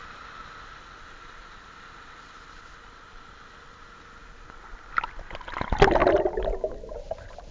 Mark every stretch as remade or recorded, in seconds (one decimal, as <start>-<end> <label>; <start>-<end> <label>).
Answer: 0.0-7.5 recorded